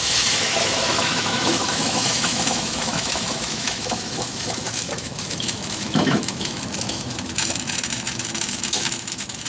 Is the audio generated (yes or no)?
yes